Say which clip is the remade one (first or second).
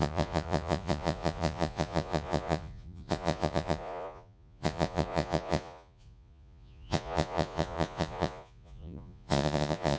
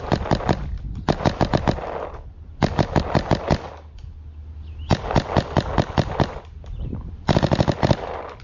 first